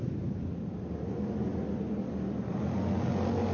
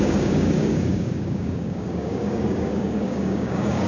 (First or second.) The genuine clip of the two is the first